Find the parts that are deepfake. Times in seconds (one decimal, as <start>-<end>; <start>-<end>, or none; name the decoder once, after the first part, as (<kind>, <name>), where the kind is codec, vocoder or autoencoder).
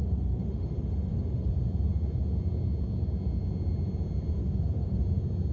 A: 0.0-1.5 (autoencoder, DAC-VAE); 4.4-5.0